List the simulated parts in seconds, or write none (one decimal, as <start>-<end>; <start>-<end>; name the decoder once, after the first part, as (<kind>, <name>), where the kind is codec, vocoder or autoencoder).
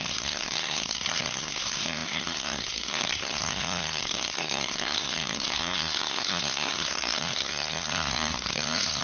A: 0.0-9.0 (codec, SNAC)